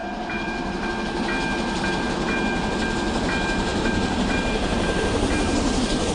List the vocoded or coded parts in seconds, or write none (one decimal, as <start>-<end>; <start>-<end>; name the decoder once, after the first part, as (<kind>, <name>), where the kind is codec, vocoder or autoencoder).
0.0-0.9 (vocoder, BigVGAN v2); 3.7-6.1